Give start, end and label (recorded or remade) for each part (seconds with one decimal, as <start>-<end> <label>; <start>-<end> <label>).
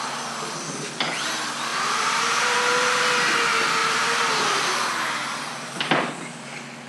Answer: 0.0-1.7 recorded; 1.7-3.0 remade; 3.0-3.8 recorded; 3.8-5.8 remade; 5.8-6.9 recorded